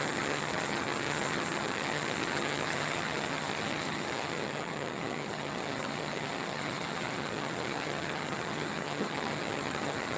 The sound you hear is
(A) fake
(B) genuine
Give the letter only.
A